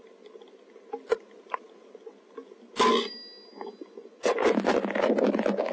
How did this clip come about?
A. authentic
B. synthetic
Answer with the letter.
A